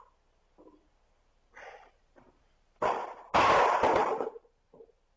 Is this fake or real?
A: real